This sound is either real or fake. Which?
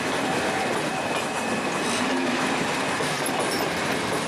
real